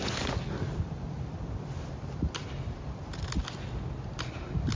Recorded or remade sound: recorded